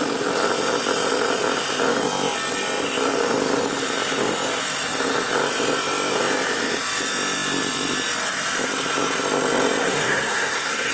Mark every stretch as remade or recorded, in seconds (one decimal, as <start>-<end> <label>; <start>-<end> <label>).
0.0-9.8 recorded; 9.8-10.9 remade